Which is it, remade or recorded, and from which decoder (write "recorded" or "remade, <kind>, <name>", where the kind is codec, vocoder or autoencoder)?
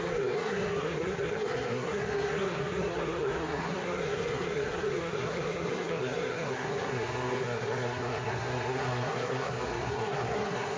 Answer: remade, codec, SNAC